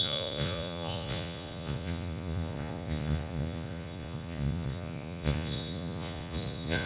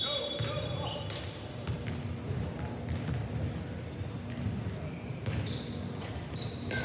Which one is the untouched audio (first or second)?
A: second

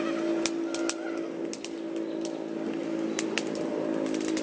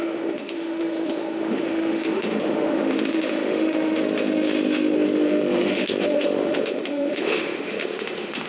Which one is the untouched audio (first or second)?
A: first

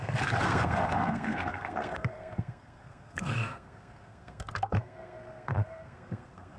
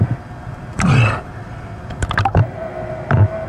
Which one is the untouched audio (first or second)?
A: second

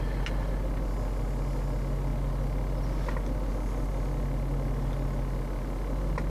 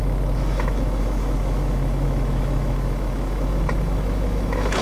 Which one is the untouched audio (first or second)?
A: first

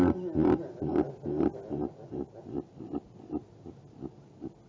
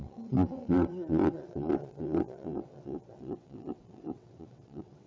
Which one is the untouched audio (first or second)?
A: first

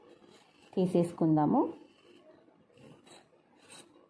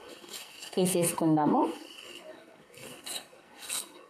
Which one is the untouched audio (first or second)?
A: first